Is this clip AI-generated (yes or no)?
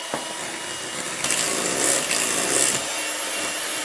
no